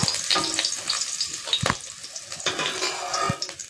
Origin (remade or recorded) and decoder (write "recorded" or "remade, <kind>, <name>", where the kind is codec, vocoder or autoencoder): recorded